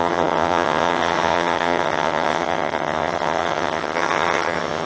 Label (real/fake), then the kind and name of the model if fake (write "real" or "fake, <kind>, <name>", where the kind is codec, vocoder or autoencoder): fake, vocoder, HiFi-GAN